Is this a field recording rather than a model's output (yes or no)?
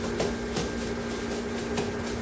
yes